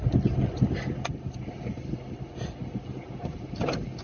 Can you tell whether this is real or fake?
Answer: real